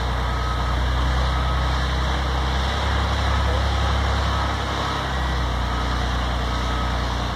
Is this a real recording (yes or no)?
yes